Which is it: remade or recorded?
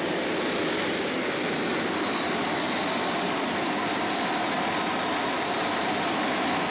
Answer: recorded